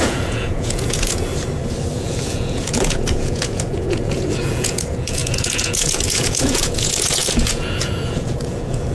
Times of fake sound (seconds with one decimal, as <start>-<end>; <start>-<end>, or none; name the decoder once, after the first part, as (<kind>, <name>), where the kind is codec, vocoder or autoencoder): 0.0-1.3 (vocoder, Vocos); 1.9-8.9

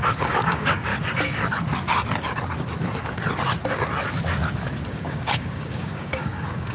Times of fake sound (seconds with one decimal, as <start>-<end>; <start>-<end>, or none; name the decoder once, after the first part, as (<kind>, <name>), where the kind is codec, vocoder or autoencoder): 0.0-0.9 (codec, DAC); 4.9-6.7

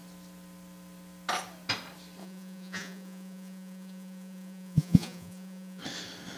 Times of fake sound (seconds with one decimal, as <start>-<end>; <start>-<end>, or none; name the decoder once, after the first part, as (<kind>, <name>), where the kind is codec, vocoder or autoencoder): 2.2-5.8 (vocoder, Vocos)

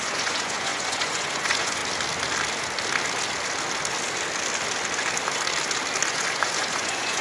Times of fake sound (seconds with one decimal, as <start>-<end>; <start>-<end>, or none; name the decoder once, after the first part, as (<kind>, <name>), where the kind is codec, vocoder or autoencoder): 0.0-1.8 (vocoder, Vocos); 6.1-7.2

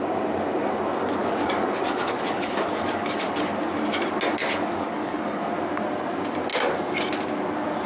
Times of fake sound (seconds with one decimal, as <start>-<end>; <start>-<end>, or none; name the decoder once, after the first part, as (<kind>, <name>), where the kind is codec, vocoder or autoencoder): 1.2-3.5 (codec, DAC); 4.4-5.5

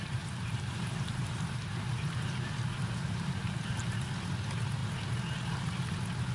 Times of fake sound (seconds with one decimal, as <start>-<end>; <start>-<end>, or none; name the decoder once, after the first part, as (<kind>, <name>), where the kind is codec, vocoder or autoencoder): 0.0-3.8 (vocoder, BigVGAN v2)

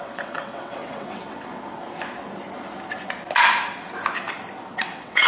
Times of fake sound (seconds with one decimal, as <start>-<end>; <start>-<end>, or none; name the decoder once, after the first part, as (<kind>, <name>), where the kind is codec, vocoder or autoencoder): 0.0-1.5 (vocoder, WaveNeXt); 4.7-5.3